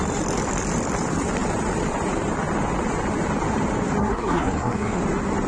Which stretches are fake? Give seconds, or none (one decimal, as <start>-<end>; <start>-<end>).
4.0-5.0